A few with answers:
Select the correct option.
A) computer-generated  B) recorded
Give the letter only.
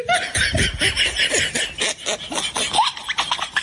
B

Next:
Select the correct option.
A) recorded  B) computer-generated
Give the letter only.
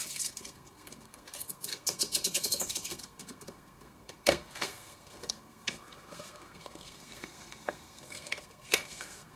B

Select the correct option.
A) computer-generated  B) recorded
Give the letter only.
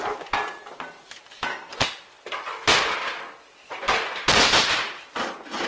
B